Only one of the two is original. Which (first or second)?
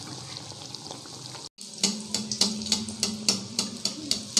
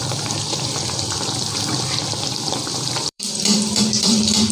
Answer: first